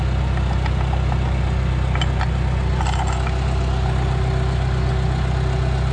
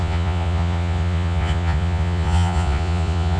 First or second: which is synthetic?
second